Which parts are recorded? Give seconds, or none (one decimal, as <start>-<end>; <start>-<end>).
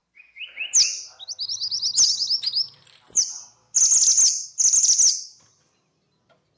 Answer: 0.0-6.6